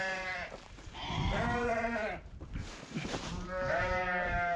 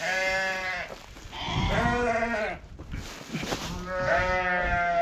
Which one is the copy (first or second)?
first